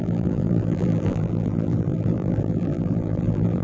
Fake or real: fake